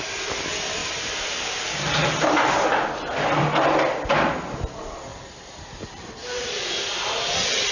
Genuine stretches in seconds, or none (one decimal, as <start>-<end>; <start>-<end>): 0.0-0.8; 2.9-5.1; 6.7-7.7